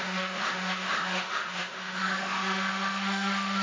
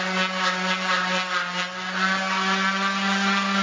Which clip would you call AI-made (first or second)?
first